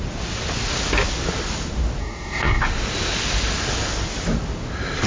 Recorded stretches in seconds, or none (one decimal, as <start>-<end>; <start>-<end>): 0.0-2.0; 2.6-5.1